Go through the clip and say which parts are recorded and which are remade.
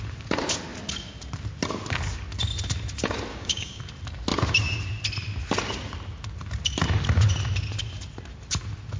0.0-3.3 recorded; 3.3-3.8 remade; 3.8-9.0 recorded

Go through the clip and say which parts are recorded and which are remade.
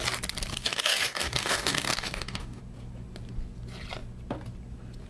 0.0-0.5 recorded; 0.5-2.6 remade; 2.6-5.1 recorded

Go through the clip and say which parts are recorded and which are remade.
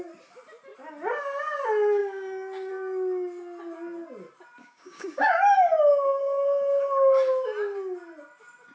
0.0-2.0 recorded; 2.0-2.7 remade; 2.7-4.6 recorded; 4.6-5.4 remade; 5.4-8.7 recorded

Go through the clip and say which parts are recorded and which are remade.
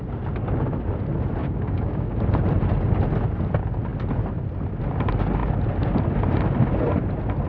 0.0-1.4 recorded; 1.4-2.2 remade; 2.2-7.5 recorded